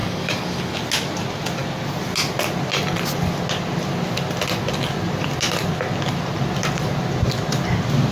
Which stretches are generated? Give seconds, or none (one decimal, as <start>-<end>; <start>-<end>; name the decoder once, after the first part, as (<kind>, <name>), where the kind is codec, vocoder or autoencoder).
0.0-0.8 (codec, DAC)